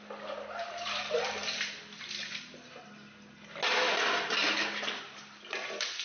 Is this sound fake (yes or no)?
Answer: no